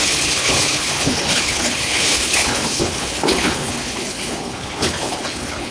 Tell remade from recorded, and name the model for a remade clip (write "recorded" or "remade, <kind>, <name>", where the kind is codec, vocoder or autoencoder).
remade, codec, HILCodec